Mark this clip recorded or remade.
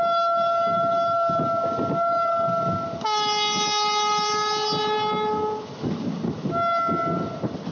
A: recorded